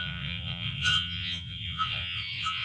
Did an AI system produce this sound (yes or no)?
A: yes